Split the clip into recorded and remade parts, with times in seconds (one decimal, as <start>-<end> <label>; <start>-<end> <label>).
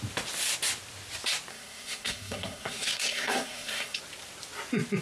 0.0-1.5 recorded; 1.5-4.0 remade; 4.0-5.0 recorded